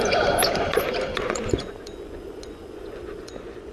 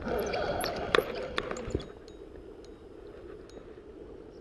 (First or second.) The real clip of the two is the second